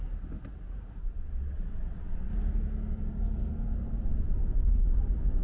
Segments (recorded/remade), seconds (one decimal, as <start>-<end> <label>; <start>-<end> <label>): 0.0-1.0 recorded; 1.0-2.3 remade; 2.3-5.4 recorded